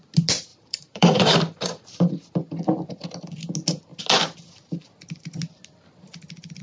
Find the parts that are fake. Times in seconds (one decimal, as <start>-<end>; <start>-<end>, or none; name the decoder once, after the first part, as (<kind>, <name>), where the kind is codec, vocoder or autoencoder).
0.5-2.4 (vocoder, BigVGAN v2)